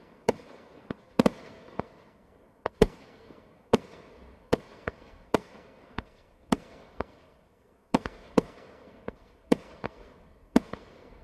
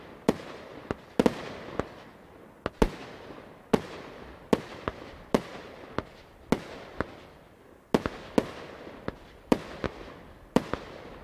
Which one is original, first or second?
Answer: second